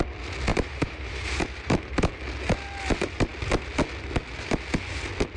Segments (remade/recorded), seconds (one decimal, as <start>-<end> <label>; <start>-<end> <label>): 0.0-0.5 recorded; 0.5-2.1 remade; 2.1-5.4 recorded